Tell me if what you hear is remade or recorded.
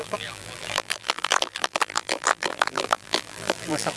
remade